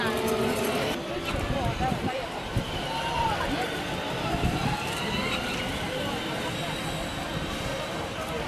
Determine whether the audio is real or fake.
real